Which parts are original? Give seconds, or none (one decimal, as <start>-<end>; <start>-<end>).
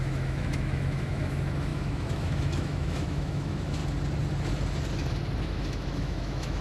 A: 3.8-5.4